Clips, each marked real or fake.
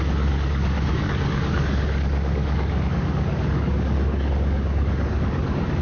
fake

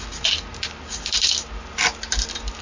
real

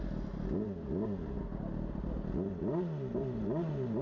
real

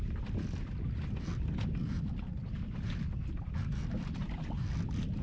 real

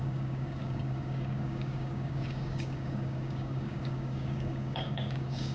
fake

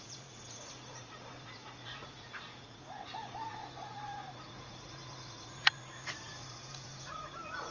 fake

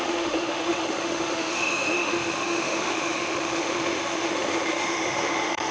fake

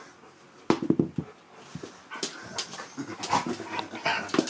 real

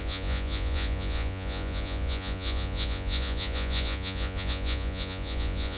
fake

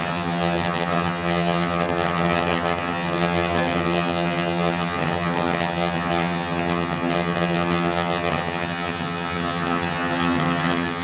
fake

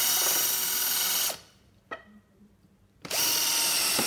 fake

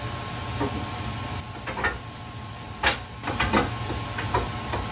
real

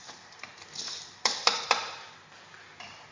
fake